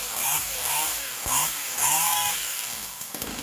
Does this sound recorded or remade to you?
remade